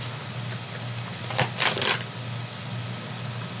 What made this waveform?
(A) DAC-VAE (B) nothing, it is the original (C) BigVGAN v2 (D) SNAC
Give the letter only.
B